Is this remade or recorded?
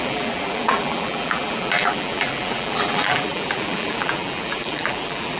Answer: remade